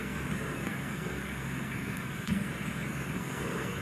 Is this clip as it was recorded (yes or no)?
no